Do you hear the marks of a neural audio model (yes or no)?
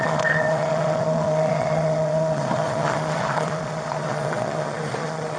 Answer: yes